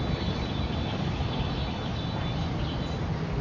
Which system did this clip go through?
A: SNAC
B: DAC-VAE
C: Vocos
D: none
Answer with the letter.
D